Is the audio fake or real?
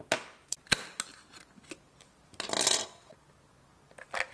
real